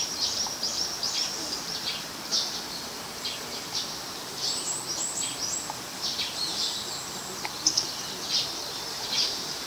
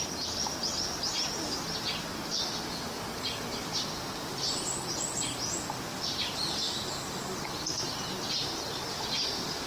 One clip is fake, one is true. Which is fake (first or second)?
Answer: first